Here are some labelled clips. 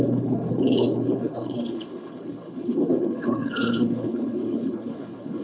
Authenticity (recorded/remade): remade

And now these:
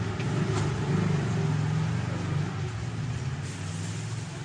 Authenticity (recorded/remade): recorded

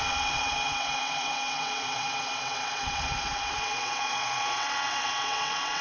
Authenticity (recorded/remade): remade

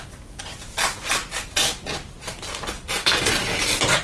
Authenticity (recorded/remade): recorded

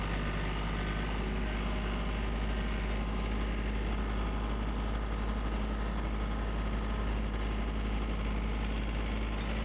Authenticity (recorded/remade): recorded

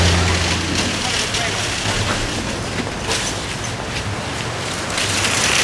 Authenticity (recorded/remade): recorded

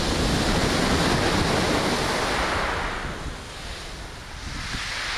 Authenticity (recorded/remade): recorded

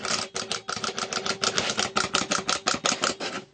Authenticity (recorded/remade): recorded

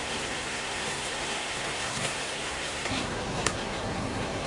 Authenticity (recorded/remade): remade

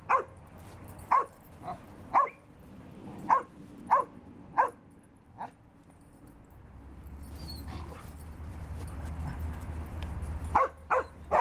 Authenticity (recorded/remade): remade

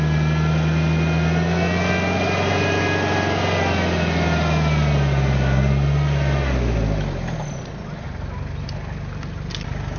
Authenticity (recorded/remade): recorded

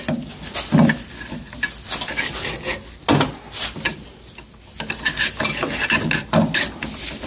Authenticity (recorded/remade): recorded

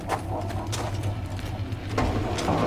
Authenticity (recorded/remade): recorded